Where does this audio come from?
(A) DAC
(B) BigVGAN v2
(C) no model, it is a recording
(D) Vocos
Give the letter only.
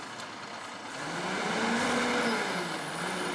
C